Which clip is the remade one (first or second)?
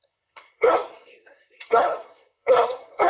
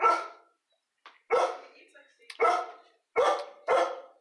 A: first